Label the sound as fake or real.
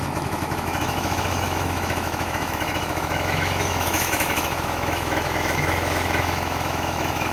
fake